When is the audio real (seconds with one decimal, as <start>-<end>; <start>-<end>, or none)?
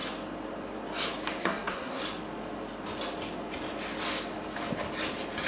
0.0-1.4; 2.0-5.5